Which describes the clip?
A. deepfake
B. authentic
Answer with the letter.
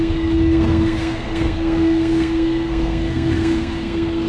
A